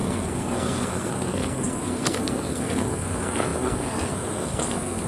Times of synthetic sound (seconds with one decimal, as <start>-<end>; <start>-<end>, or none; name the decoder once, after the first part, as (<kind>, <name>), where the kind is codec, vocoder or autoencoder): 0.0-5.1 (codec, SNAC)